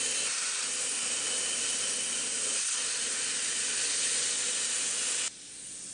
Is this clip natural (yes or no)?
yes